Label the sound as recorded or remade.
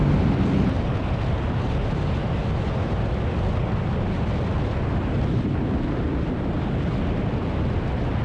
recorded